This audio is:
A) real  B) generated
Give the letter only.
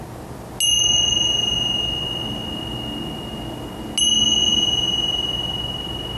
A